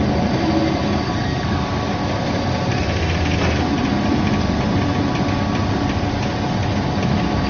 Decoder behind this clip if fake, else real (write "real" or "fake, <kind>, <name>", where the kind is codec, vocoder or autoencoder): real